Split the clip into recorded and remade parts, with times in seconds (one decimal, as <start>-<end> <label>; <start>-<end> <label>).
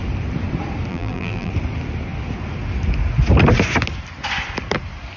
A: 0.0-0.9 recorded; 0.9-1.5 remade; 1.5-5.2 recorded